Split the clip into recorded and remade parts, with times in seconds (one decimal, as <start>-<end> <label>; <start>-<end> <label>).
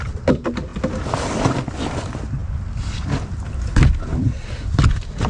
0.0-5.3 recorded